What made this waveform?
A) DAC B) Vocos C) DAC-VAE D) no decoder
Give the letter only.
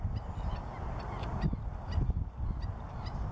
D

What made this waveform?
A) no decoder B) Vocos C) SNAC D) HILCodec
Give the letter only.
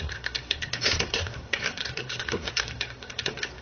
C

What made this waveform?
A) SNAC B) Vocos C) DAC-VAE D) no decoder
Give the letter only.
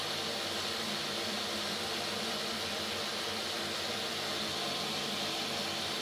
D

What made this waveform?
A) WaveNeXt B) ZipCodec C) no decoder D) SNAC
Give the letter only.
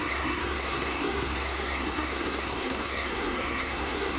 D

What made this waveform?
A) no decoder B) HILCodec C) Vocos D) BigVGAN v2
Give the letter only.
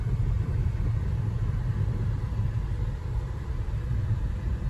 D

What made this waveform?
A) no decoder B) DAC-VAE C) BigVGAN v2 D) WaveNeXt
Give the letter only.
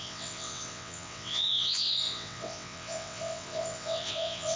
D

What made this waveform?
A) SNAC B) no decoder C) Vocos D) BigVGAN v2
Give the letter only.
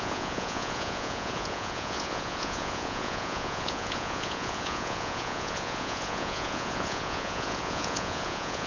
C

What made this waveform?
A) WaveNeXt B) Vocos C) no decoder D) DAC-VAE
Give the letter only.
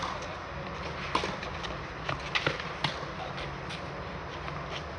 C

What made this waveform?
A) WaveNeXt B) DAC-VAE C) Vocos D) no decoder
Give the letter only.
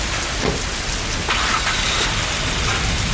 D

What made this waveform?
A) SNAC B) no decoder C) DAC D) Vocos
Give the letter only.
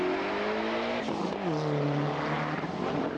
B